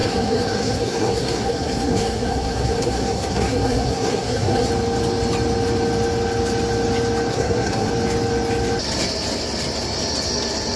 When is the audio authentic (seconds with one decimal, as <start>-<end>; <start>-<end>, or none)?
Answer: 4.7-7.3; 7.9-10.8